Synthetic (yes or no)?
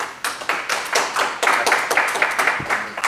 no